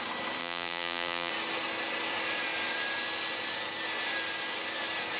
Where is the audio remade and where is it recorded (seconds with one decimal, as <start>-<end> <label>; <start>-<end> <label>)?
0.0-0.4 recorded; 0.4-1.3 remade; 1.3-5.2 recorded

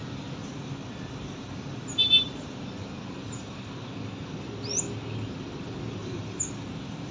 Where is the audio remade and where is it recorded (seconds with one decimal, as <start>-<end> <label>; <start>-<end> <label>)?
0.0-0.4 recorded; 0.4-2.6 remade; 2.6-6.0 recorded; 6.0-7.1 remade

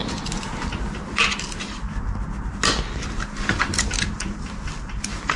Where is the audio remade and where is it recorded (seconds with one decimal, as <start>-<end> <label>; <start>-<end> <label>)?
0.0-5.4 recorded